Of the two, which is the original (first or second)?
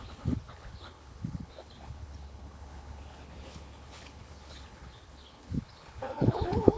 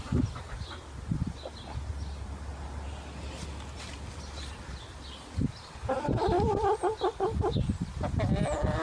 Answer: second